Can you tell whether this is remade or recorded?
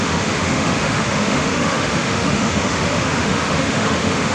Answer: remade